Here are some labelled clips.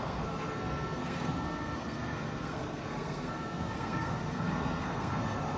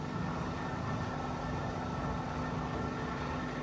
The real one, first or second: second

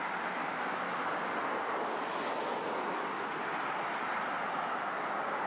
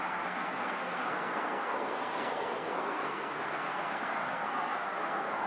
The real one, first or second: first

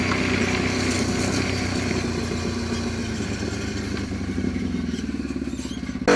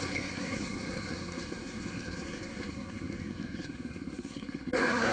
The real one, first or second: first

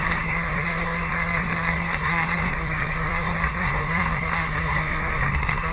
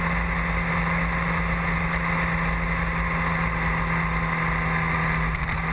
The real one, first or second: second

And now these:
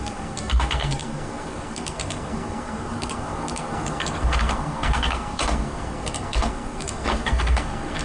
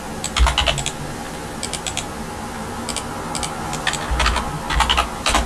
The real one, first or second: second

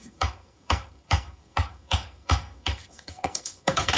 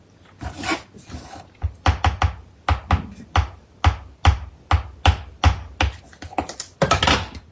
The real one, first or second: second